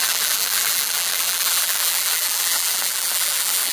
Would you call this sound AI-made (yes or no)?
yes